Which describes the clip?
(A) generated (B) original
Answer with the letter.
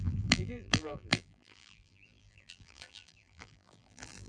A